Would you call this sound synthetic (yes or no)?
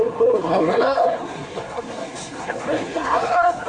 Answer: yes